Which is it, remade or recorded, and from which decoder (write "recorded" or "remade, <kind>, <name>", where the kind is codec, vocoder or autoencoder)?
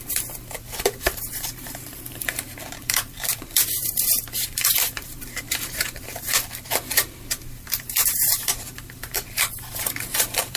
remade, vocoder, BigVGAN v2